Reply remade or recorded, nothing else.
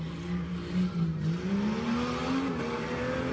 recorded